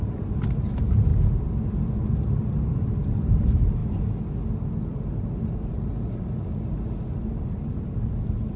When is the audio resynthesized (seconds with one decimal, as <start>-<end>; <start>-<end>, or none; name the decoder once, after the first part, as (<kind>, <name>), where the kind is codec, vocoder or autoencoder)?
none